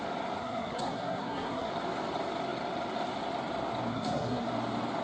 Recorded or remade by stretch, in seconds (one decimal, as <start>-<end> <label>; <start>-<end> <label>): 0.0-0.4 recorded; 0.4-1.7 remade; 1.7-3.9 recorded; 3.9-4.5 remade; 4.5-5.0 recorded